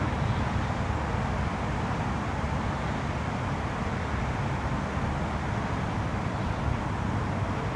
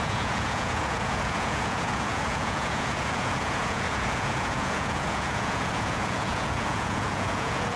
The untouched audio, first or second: first